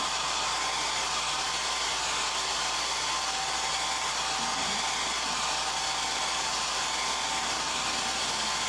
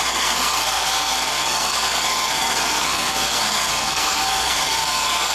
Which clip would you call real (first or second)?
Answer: first